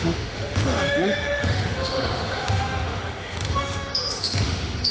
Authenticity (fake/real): fake